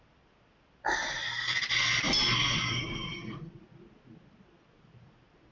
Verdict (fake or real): real